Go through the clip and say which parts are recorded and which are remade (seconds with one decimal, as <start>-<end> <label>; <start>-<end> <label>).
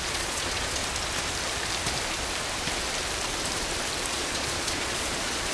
0.0-0.8 remade; 0.8-4.1 recorded; 4.1-5.5 remade